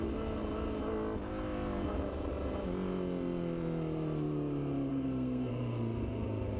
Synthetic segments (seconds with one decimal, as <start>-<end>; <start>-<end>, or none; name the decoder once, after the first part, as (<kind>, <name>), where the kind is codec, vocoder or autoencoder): 4.9-5.5 (codec, SNAC)